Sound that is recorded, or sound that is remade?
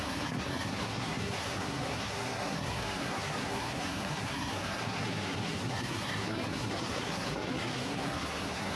remade